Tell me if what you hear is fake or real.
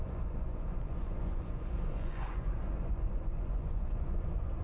fake